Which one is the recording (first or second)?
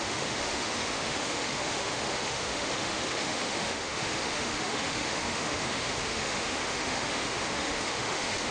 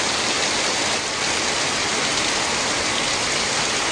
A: second